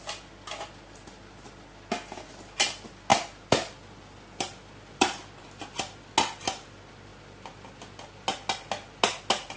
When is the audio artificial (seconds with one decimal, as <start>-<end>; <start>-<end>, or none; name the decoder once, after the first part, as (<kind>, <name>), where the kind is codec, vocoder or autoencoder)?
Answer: 3.1-5.4 (vocoder, BigVGAN v2)